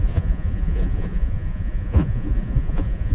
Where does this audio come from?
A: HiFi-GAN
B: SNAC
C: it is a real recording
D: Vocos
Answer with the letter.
D